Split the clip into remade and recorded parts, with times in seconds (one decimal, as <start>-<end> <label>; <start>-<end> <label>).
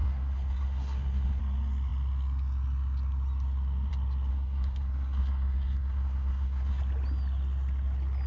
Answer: 0.0-1.4 remade; 1.4-4.3 recorded; 4.3-6.8 remade; 6.8-8.3 recorded